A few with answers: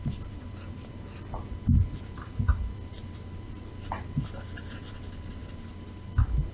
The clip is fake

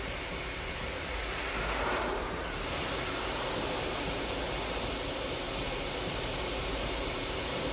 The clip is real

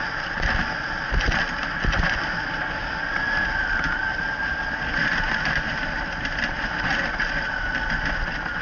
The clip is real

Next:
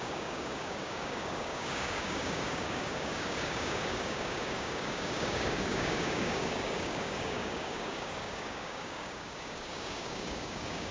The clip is fake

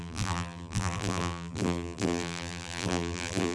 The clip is fake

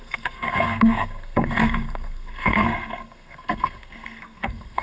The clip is fake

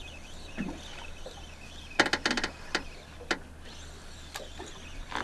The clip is real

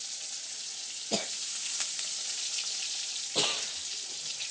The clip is real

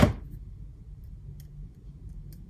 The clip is real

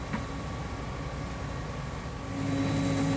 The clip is real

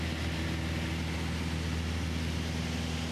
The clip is real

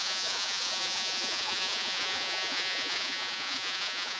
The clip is fake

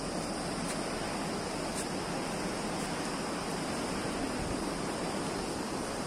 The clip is real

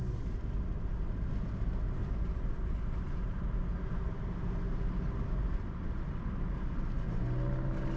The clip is real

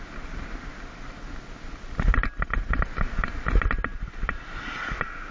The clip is real